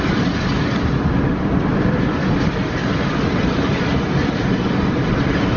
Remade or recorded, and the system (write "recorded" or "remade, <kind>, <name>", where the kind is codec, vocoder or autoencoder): remade, vocoder, BigVGAN v2